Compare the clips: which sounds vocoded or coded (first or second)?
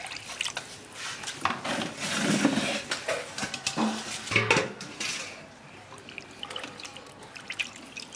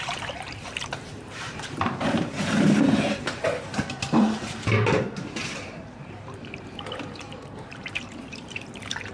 second